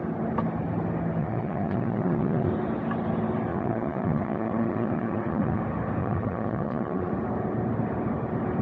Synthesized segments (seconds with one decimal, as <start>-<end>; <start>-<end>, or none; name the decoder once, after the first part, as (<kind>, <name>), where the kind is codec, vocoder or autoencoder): 1.2-2.5 (vocoder, Vocos); 3.5-5.6; 6.0-7.1